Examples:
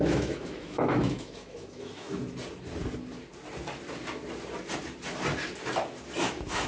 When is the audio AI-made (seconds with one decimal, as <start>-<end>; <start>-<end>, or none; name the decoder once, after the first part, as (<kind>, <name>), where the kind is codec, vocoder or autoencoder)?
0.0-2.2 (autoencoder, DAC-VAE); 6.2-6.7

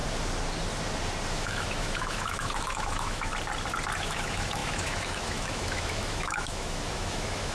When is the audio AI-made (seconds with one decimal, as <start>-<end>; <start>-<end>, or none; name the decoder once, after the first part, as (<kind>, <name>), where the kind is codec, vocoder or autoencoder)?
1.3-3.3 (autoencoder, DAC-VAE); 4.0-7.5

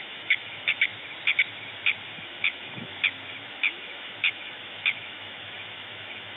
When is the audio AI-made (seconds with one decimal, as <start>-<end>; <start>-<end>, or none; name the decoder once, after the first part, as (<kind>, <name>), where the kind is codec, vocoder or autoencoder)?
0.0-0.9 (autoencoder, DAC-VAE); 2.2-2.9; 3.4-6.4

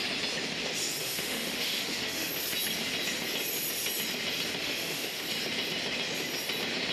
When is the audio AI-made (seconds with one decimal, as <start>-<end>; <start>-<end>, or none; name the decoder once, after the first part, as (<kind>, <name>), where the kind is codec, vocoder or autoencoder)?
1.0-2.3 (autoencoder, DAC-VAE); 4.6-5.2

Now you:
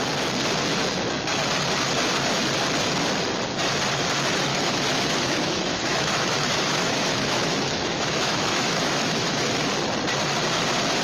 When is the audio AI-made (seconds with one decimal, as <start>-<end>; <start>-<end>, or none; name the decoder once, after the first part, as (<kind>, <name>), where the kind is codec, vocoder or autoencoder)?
4.5-9.6 (autoencoder, DAC-VAE)